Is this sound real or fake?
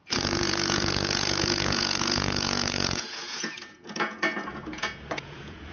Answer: fake